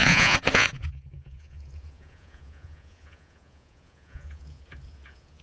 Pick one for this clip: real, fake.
fake